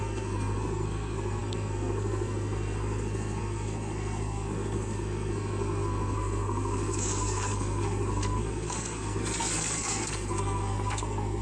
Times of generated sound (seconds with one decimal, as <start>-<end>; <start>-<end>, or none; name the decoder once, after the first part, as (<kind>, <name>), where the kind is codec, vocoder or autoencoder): 0.0-11.4 (codec, SNAC)